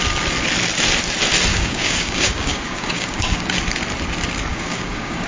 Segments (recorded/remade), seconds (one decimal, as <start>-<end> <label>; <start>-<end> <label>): 0.0-1.5 recorded; 1.5-3.6 remade; 3.6-4.5 recorded; 4.5-5.3 remade